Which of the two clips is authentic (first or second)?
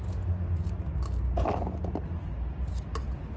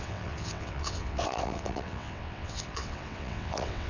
first